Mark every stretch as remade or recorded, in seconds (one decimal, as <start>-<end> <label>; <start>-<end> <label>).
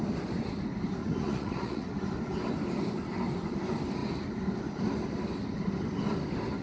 0.0-1.0 recorded; 1.0-1.9 remade; 1.9-6.6 recorded